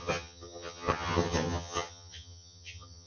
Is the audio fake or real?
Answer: fake